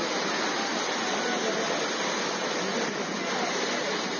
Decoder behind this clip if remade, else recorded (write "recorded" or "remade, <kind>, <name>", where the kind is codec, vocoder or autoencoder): recorded